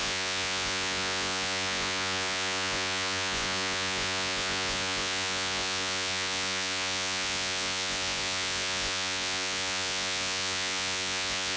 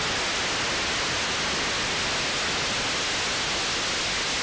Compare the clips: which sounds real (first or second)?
second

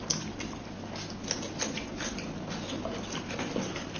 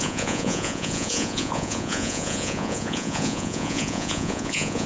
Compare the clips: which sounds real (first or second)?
first